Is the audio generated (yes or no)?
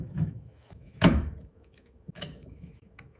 yes